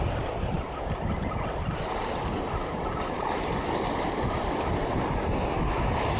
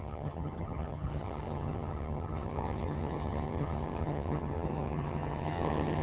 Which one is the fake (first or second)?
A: second